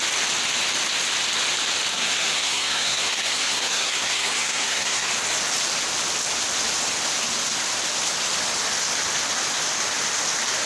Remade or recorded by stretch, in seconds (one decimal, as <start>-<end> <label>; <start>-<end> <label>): 0.0-1.9 recorded; 1.9-5.1 remade; 5.1-10.7 recorded